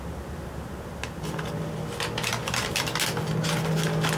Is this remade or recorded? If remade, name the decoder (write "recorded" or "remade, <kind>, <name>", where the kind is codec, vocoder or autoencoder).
recorded